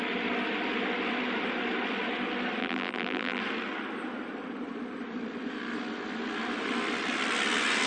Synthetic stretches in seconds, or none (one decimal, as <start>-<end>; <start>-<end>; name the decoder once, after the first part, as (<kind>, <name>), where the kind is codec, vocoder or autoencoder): 2.6-3.4 (vocoder, BigVGAN v2)